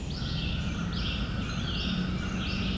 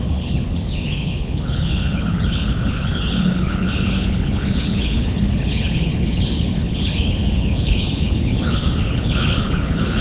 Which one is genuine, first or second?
first